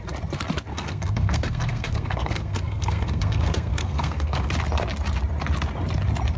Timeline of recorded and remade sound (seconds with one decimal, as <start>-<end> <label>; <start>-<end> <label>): 0.0-0.7 recorded; 0.7-4.5 remade; 4.5-6.4 recorded